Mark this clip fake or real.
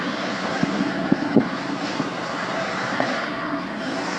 fake